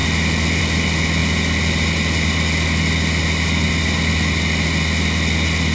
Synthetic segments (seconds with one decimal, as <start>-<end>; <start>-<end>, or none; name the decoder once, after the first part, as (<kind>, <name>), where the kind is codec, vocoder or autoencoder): none